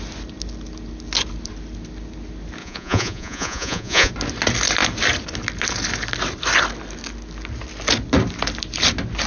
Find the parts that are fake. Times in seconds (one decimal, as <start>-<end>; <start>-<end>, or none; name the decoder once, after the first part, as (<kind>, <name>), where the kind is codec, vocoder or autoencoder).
2.6-4.1 (vocoder, Vocos)